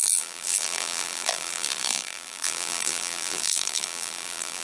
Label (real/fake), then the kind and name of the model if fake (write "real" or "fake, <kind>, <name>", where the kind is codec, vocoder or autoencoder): fake, vocoder, BigVGAN v2